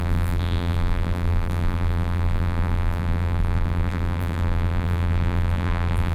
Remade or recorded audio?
remade